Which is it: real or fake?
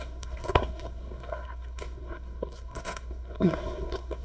fake